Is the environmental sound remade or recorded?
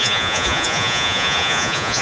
remade